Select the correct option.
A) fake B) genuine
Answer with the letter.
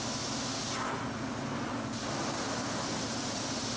B